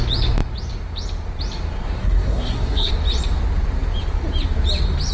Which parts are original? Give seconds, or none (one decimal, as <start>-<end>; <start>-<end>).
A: 0.0-2.0; 2.9-5.1